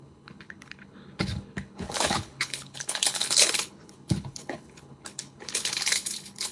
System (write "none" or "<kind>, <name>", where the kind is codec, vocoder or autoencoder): codec, HILCodec